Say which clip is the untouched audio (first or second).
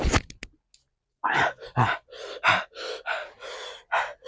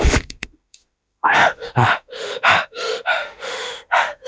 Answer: first